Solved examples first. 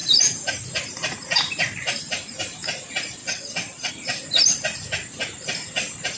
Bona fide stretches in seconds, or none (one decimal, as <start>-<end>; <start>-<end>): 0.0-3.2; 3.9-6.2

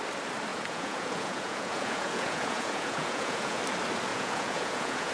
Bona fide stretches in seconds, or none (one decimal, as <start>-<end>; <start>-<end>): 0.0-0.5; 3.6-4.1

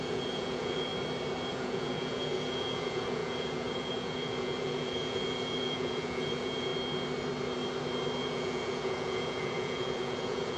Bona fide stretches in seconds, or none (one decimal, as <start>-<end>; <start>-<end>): 0.9-1.5; 6.7-8.2

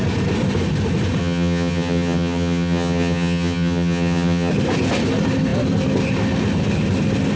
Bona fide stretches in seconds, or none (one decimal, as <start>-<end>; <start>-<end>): 0.0-1.2; 4.5-7.4